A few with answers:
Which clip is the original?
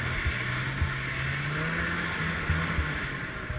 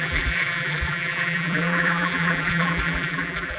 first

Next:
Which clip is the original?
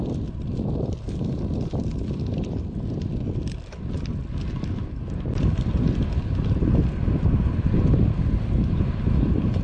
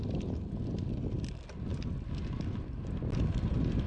second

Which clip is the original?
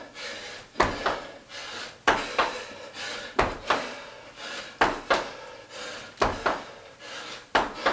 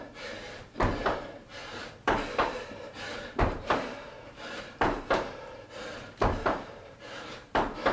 first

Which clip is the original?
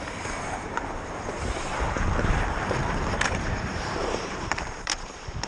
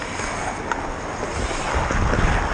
second